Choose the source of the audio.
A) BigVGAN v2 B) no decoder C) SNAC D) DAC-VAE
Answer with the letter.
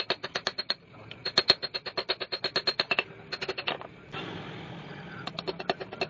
B